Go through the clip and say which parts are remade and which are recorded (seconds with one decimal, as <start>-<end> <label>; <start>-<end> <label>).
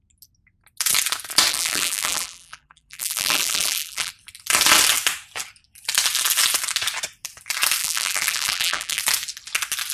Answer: 0.0-1.5 recorded; 1.5-4.1 remade; 4.1-7.8 recorded; 7.8-9.0 remade; 9.0-9.9 recorded